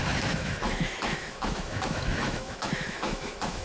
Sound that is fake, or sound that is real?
fake